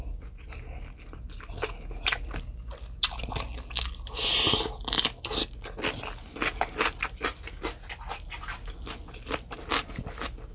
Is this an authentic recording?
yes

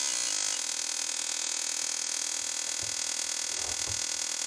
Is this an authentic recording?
yes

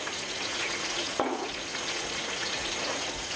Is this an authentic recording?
no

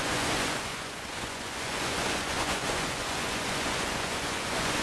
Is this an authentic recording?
no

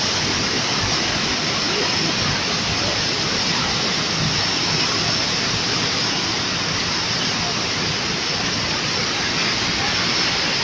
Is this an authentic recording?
yes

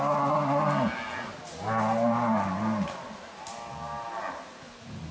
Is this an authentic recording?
yes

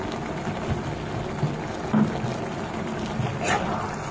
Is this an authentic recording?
yes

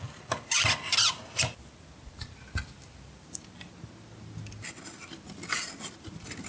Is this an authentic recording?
yes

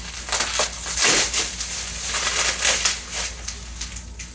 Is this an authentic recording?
yes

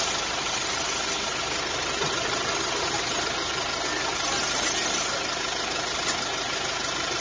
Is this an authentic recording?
yes